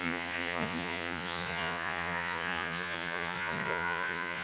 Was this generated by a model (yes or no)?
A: yes